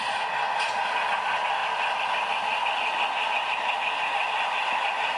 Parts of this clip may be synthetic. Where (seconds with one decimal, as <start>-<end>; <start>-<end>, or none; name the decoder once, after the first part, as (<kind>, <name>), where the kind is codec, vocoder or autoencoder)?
none